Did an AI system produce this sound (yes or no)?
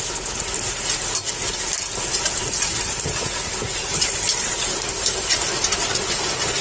no